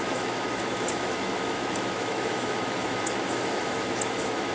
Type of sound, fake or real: fake